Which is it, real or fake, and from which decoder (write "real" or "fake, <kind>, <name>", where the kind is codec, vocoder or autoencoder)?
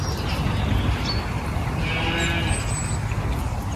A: real